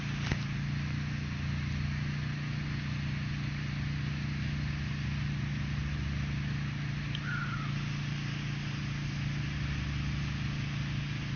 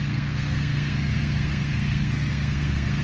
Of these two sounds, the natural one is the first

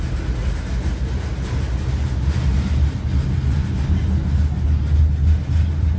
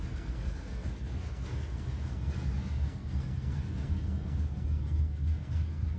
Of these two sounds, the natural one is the first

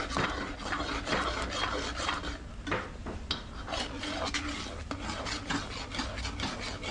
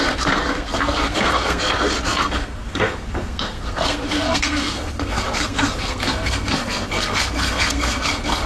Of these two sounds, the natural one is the first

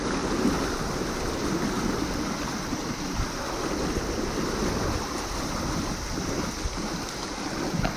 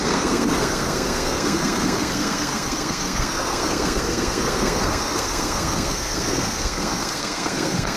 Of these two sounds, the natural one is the first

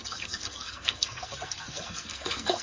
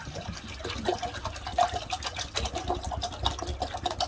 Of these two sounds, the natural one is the second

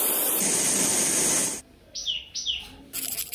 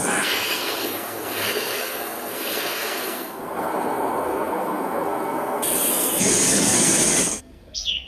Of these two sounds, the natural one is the first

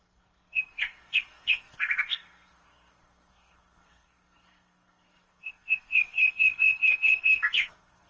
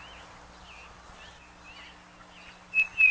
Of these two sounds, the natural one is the second